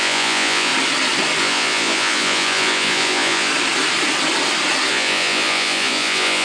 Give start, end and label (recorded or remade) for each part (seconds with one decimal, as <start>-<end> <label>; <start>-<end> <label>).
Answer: 0.0-0.7 remade; 0.7-1.4 recorded; 1.4-3.5 remade; 3.5-4.9 recorded; 4.9-6.4 remade